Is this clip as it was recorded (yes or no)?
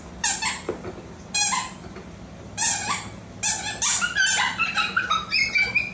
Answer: yes